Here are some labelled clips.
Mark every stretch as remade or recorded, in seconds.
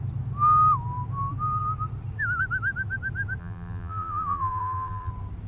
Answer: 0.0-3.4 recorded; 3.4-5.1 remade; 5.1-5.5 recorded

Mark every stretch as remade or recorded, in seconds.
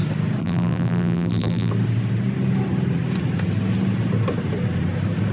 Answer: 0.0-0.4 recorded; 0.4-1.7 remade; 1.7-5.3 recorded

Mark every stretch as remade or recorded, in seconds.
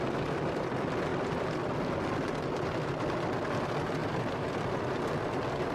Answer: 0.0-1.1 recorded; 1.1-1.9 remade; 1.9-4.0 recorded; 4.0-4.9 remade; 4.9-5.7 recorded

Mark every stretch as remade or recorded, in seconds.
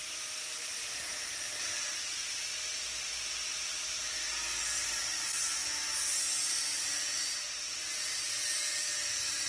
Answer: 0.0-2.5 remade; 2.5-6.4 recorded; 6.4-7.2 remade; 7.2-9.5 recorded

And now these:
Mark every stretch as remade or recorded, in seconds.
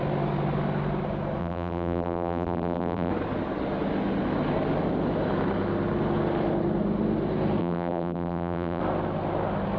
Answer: 0.0-1.4 recorded; 1.4-3.1 remade; 3.1-7.6 recorded; 7.6-8.8 remade; 8.8-9.8 recorded